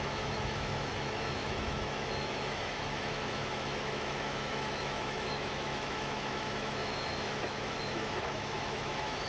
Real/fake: fake